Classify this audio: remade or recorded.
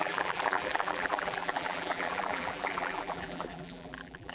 remade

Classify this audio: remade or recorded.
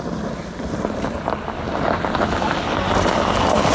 recorded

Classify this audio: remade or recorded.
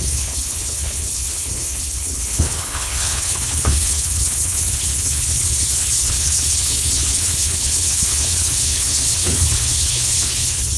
remade